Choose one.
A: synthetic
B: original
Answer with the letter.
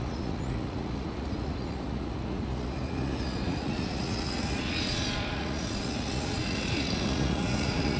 A